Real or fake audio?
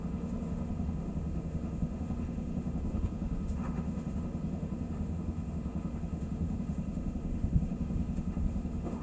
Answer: fake